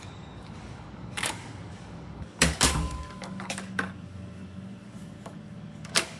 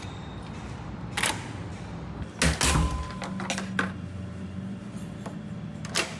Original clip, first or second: second